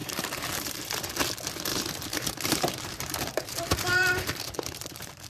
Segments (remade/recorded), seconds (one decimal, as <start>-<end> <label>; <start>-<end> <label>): 0.0-1.1 remade; 1.1-1.7 recorded; 1.7-5.3 remade